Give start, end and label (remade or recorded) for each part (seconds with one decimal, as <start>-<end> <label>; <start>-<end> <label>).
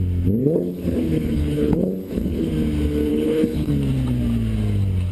0.0-0.4 recorded; 0.4-2.5 remade; 2.5-3.1 recorded; 3.1-3.7 remade; 3.7-5.1 recorded